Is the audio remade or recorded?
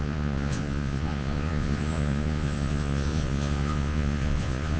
remade